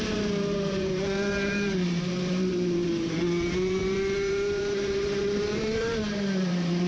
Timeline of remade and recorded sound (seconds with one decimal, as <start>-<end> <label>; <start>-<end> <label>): 0.0-6.9 remade